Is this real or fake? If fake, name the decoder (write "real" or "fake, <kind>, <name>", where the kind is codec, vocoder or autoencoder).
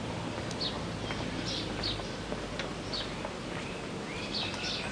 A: real